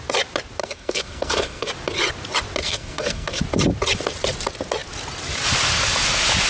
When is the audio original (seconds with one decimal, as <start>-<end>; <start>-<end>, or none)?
0.0-0.6; 1.7-2.6; 3.4-6.5